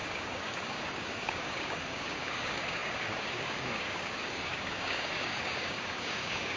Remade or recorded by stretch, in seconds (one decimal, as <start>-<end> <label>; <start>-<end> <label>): 0.0-6.6 remade